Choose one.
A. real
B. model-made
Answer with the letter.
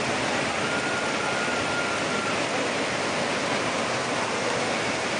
A